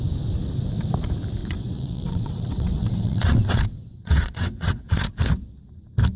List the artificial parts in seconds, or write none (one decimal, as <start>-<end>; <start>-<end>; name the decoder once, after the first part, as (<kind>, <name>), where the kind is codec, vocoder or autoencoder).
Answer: 1.4-5.1 (vocoder, WaveNeXt)